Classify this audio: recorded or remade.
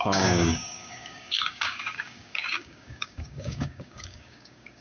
remade